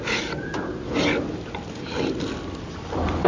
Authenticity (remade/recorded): recorded